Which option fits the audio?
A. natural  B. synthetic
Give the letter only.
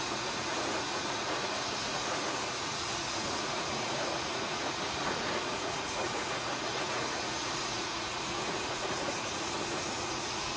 B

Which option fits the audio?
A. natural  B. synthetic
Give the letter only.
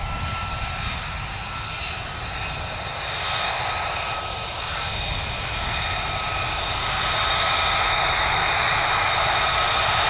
A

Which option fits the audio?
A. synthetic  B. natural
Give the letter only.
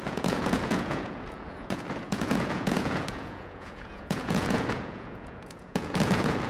A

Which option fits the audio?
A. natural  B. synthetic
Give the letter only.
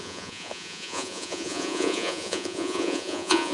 B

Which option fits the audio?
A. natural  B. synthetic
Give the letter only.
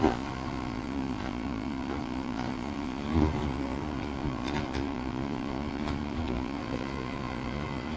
B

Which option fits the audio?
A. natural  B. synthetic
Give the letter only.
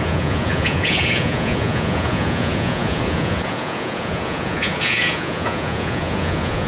B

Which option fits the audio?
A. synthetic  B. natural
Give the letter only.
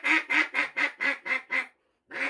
A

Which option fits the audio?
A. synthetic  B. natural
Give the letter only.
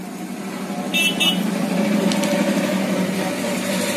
B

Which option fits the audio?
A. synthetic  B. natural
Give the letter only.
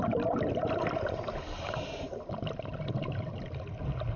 B